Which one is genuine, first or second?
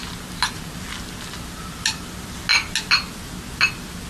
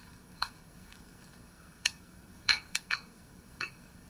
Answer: first